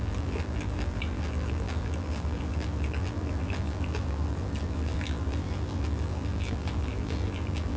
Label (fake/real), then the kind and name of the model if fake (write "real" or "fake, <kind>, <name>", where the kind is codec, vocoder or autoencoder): fake, vocoder, BigVGAN v2